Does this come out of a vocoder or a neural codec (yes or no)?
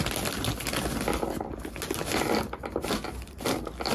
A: no